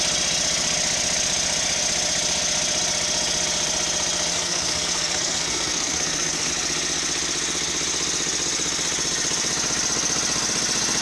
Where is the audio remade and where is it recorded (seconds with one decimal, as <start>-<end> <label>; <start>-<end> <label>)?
0.0-4.3 recorded; 4.3-6.5 remade; 6.5-11.0 recorded